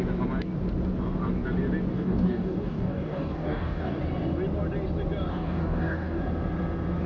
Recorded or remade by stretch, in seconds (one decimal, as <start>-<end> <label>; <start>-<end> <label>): 0.0-1.9 recorded; 1.9-4.0 remade; 4.0-5.3 recorded; 5.3-6.2 remade; 6.2-7.1 recorded